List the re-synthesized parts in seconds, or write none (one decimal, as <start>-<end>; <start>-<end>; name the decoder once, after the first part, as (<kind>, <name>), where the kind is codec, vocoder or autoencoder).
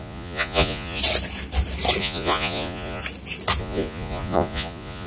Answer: 0.0-1.0 (vocoder, Vocos); 2.0-3.0; 3.6-5.1